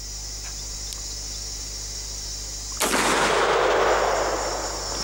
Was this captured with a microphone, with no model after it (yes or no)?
yes